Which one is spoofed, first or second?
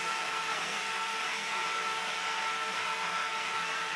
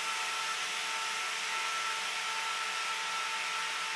first